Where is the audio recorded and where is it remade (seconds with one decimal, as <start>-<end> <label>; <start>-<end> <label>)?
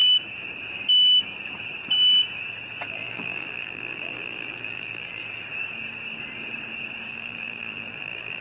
0.0-2.9 recorded; 2.9-5.2 remade; 5.2-7.1 recorded; 7.1-8.4 remade